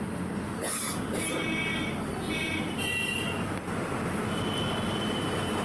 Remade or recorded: remade